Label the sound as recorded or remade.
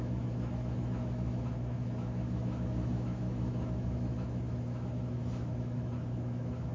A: remade